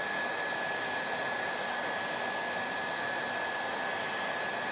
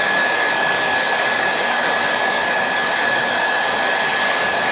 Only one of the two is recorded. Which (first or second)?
first